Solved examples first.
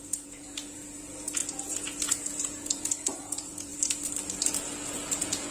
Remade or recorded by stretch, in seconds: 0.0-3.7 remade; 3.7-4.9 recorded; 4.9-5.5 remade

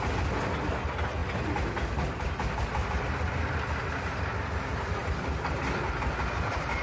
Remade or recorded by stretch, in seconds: 0.0-6.8 recorded